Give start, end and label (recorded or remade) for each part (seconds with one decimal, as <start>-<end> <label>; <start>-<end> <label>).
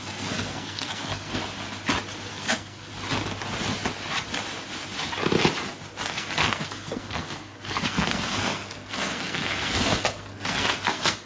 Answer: 0.0-1.4 remade; 1.4-2.3 recorded; 2.3-2.9 remade; 2.9-6.1 recorded; 6.1-11.3 remade